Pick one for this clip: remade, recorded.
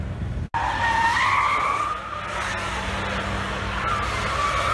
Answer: recorded